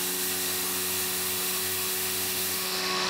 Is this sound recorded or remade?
remade